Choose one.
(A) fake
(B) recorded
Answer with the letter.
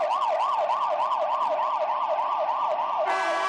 B